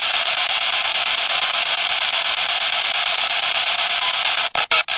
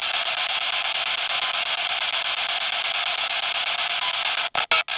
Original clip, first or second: second